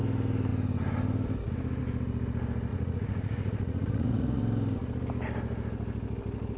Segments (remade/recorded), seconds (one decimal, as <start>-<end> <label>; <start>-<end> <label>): 0.0-2.7 recorded; 2.7-4.4 remade; 4.4-6.6 recorded